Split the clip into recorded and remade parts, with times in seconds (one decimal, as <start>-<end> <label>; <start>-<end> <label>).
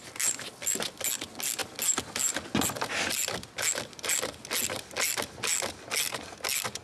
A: 0.0-6.8 recorded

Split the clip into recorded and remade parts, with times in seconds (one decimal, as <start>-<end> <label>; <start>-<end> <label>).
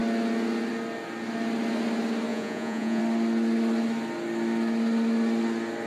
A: 0.0-2.3 recorded; 2.3-3.0 remade; 3.0-5.9 recorded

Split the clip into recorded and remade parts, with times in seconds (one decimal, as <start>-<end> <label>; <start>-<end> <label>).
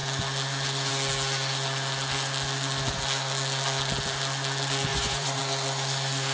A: 0.0-4.9 recorded; 4.9-5.4 remade; 5.4-6.3 recorded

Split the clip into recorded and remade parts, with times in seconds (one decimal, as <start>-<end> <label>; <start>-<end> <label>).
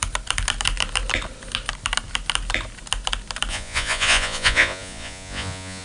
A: 0.0-3.5 recorded; 3.5-5.8 remade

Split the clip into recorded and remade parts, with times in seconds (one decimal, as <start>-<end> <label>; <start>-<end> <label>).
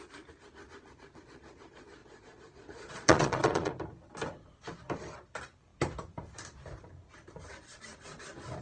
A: 0.0-2.0 recorded; 2.0-3.7 remade; 3.7-8.6 recorded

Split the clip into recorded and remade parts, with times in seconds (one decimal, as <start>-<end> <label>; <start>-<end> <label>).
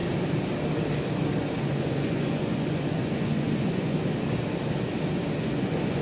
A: 0.0-1.5 recorded; 1.5-4.0 remade; 4.0-5.4 recorded; 5.4-6.0 remade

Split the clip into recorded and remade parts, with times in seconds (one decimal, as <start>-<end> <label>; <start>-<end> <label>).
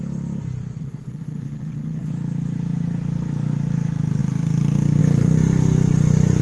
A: 0.0-0.8 recorded; 0.8-2.1 remade; 2.1-6.4 recorded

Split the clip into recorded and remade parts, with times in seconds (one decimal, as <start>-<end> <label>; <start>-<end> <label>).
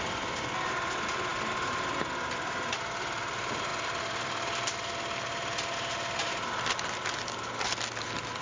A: 0.0-8.4 recorded